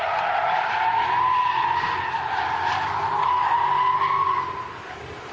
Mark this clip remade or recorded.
recorded